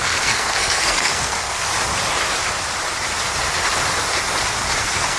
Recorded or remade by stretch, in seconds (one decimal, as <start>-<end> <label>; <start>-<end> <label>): 0.0-1.7 remade; 1.7-4.8 recorded; 4.8-5.2 remade